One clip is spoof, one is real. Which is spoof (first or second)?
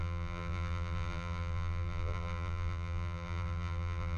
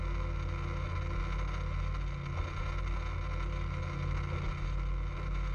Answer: first